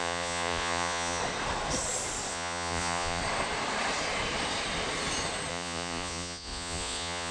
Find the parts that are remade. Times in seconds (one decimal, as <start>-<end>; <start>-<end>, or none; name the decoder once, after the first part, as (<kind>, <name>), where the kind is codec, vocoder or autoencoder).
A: 0.0-1.2 (vocoder, Vocos); 2.3-3.2; 5.5-7.3